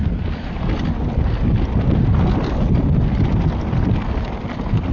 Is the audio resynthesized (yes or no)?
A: no